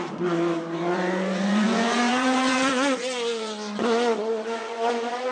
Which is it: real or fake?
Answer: fake